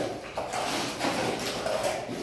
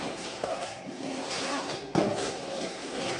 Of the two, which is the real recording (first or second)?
first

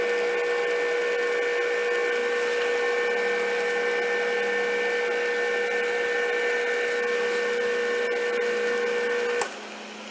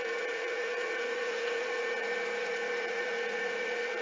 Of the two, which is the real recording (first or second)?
first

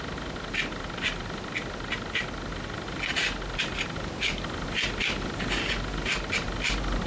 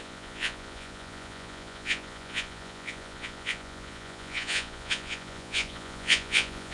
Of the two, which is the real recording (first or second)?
first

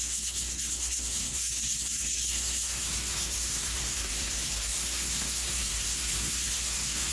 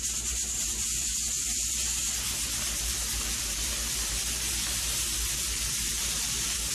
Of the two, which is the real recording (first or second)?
second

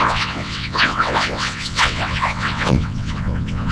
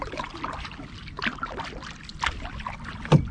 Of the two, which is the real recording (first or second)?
second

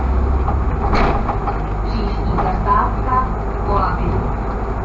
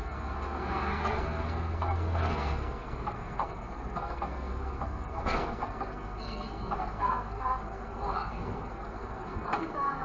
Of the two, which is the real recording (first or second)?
first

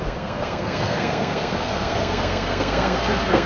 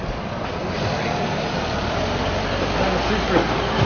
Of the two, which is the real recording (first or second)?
second